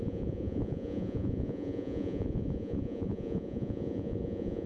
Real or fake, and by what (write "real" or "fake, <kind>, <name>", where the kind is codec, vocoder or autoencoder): fake, vocoder, Vocos